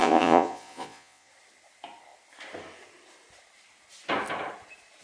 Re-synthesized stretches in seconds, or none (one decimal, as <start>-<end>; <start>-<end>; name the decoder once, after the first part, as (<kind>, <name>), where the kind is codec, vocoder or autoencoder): 0.0-1.3 (vocoder, Vocos)